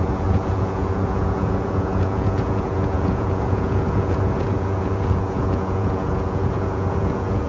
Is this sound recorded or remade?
remade